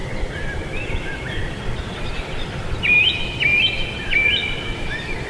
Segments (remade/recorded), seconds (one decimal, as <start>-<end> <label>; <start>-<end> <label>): 0.0-3.2 remade; 3.2-4.4 recorded; 4.4-5.3 remade